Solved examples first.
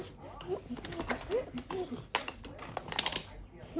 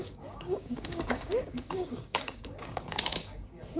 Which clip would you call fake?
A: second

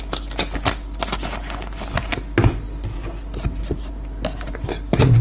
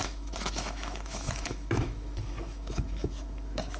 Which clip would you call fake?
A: second